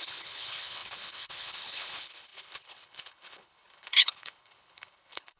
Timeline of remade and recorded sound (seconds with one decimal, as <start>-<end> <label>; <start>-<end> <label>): 0.0-5.4 remade